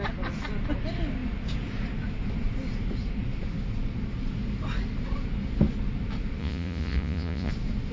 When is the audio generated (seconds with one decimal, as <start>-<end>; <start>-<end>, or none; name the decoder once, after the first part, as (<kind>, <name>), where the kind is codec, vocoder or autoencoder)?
6.4-7.5 (vocoder, Vocos)